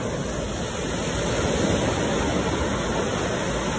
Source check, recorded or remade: recorded